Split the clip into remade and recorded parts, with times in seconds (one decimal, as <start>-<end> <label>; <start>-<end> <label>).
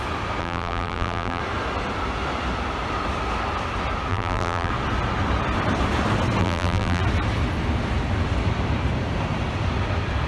0.0-0.4 recorded; 0.4-1.4 remade; 1.4-4.1 recorded; 4.1-4.7 remade; 4.7-6.4 recorded; 6.4-7.0 remade; 7.0-10.3 recorded